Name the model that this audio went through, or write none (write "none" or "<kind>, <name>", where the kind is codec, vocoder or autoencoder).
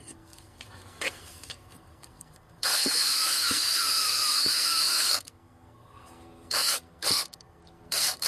codec, SNAC